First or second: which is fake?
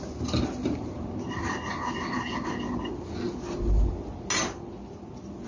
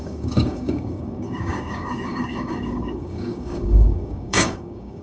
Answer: second